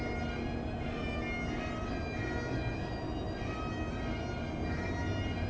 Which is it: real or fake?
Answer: real